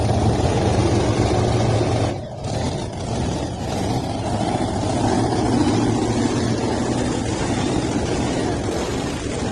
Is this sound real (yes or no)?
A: yes